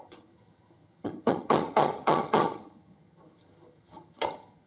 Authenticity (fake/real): fake